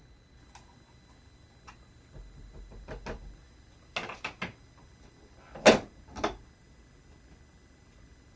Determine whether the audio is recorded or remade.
recorded